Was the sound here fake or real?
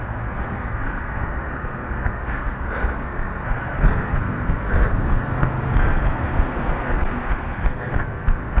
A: fake